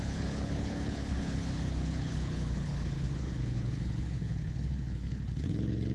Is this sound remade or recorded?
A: remade